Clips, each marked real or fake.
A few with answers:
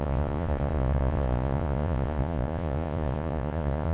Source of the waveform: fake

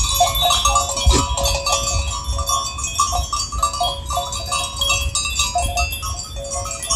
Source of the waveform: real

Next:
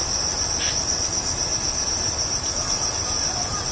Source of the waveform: real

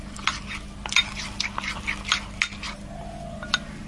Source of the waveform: real